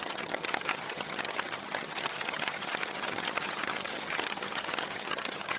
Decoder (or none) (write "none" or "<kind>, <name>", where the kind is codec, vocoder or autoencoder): vocoder, HiFi-GAN